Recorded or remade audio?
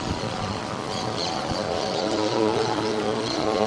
remade